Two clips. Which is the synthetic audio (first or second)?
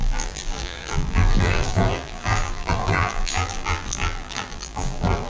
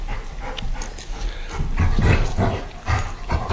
first